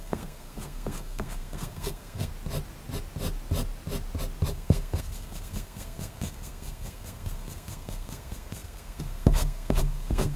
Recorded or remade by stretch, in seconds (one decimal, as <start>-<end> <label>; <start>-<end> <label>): 0.0-2.3 remade; 2.3-4.5 recorded; 4.5-10.4 remade